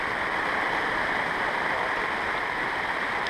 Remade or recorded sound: recorded